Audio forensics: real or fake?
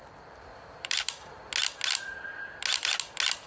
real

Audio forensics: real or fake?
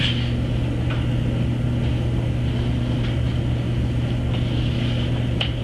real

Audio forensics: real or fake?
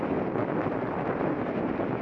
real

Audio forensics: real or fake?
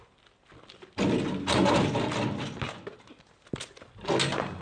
real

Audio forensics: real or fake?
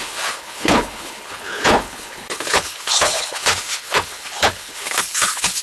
fake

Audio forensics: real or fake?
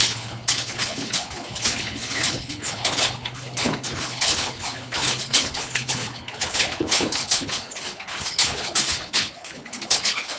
fake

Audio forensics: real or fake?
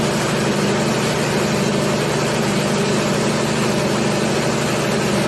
real